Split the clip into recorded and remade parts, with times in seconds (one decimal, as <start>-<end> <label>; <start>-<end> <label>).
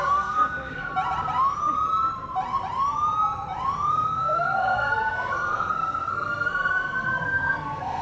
0.0-0.9 remade; 0.9-3.9 recorded; 3.9-8.0 remade